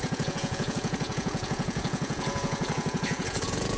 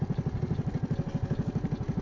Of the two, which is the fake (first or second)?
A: first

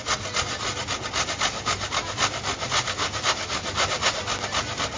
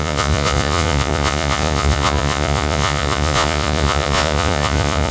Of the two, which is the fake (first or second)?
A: second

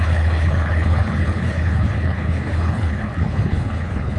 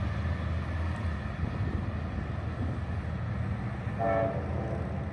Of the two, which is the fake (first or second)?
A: first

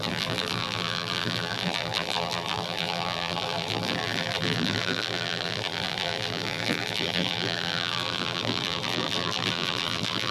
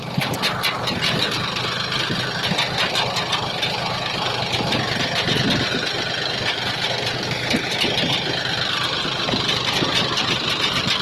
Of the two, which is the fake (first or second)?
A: first